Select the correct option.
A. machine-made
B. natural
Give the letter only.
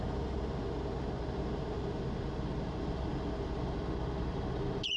B